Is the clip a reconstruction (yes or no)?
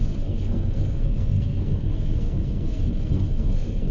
yes